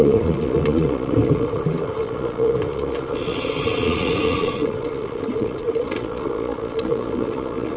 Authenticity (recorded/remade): remade